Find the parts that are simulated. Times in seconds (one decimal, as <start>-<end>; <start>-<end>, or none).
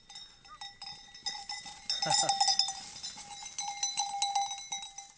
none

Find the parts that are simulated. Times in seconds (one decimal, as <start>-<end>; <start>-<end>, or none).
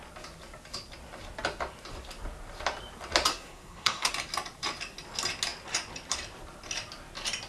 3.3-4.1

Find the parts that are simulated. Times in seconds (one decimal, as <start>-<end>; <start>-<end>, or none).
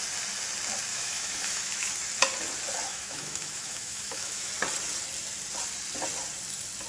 0.9-1.9; 2.9-4.5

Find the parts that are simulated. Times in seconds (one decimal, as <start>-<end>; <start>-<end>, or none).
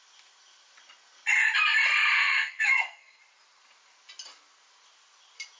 2.2-3.2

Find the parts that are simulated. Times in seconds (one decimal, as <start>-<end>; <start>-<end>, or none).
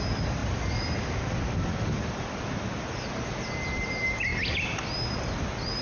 none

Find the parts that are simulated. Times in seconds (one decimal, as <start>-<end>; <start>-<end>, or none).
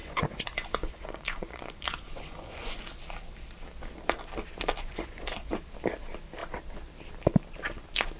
0.0-2.8; 4.8-5.5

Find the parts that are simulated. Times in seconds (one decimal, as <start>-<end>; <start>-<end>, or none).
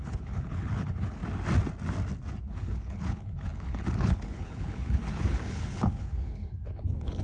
0.0-1.2; 2.4-7.2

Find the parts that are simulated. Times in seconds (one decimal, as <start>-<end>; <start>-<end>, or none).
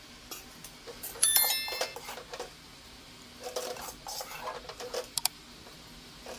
0.9-1.5